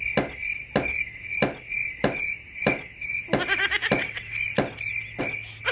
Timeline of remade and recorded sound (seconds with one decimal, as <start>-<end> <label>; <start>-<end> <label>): 0.0-5.7 recorded